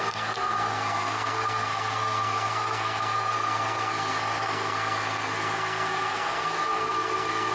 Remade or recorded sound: remade